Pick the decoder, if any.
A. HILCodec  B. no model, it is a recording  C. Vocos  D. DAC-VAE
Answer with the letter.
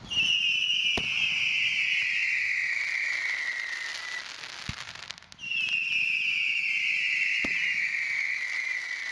B